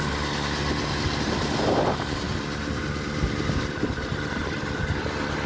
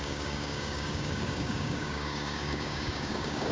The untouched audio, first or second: first